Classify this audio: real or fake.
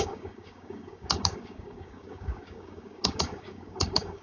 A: fake